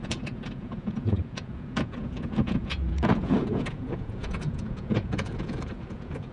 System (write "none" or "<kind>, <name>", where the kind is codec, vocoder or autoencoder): vocoder, Vocos